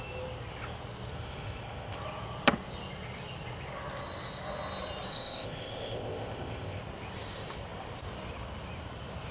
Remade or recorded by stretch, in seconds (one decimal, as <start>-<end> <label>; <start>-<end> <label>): 0.0-1.1 recorded; 1.1-2.0 remade; 2.0-5.1 recorded; 5.1-6.8 remade; 6.8-9.3 recorded